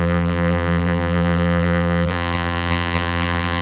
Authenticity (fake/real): fake